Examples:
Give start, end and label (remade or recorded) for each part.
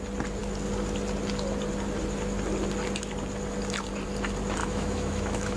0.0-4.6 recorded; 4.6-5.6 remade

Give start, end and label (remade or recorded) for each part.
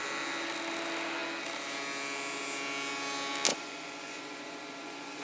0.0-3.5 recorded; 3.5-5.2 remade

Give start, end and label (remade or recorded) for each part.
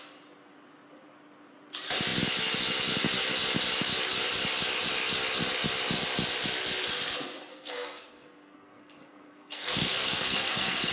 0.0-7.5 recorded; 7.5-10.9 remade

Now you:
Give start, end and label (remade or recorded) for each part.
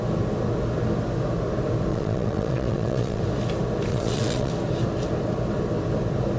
0.0-1.9 recorded; 1.9-3.2 remade; 3.2-3.9 recorded; 3.9-4.5 remade; 4.5-6.4 recorded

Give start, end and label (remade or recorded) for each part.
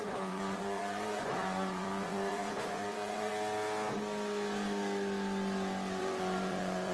0.0-3.3 remade; 3.3-6.0 recorded; 6.0-6.9 remade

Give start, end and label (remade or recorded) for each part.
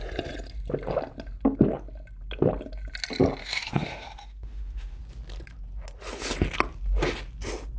0.0-3.4 recorded; 3.4-5.0 remade; 5.0-7.8 recorded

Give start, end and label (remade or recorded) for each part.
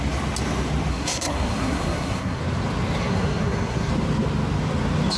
0.0-0.9 recorded; 0.9-2.4 remade; 2.4-3.0 recorded; 3.0-3.9 remade; 3.9-5.2 recorded